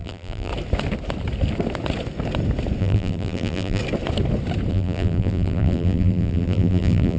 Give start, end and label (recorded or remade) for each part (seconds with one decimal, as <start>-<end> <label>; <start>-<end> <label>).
0.0-0.5 remade; 0.5-2.8 recorded; 2.8-3.8 remade; 3.8-4.7 recorded; 4.7-7.2 remade